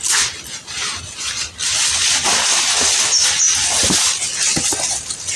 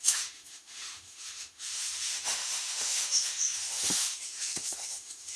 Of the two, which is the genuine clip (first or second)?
first